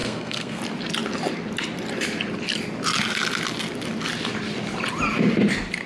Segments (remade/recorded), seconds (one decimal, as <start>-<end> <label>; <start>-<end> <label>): 0.0-0.6 remade; 0.6-5.9 recorded